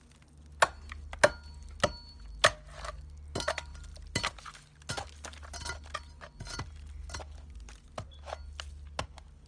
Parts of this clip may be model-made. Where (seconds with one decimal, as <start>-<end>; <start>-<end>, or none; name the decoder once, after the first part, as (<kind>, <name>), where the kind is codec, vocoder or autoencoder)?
none